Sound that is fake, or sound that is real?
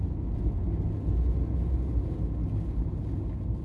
real